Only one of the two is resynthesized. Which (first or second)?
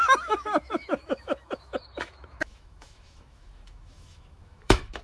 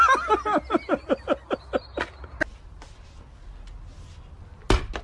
first